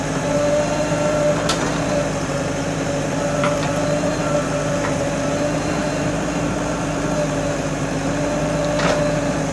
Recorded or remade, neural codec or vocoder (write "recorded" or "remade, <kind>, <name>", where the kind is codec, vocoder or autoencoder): remade, vocoder, BigVGAN v2